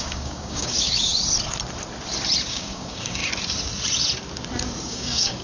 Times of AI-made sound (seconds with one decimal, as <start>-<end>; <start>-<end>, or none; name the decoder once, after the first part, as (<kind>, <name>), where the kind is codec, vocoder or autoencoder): 0.0-1.1 (codec, DAC); 2.5-3.2; 4.8-5.4